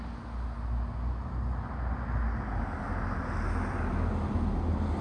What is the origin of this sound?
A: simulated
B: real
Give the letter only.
B